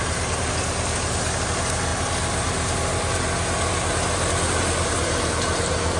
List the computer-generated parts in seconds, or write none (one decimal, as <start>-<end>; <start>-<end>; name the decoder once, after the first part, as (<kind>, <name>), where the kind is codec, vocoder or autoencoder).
none